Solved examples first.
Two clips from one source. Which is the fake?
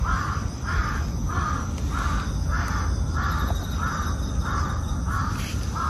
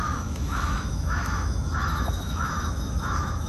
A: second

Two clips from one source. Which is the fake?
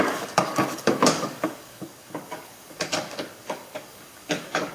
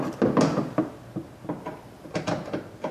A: first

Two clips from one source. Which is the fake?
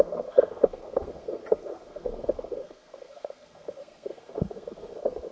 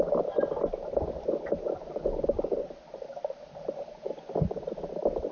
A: first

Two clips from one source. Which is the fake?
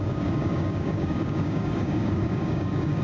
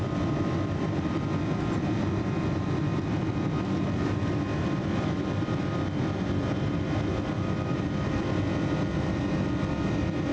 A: first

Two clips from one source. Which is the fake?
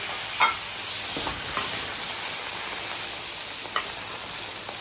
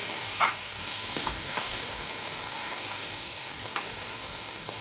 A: second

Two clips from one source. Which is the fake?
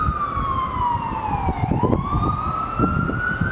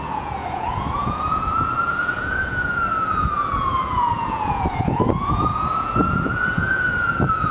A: second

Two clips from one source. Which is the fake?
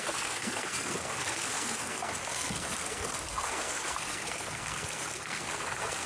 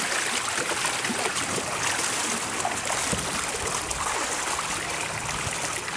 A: first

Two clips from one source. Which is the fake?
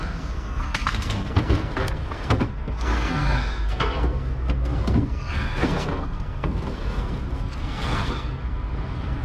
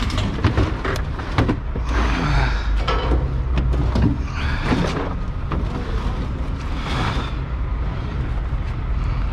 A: first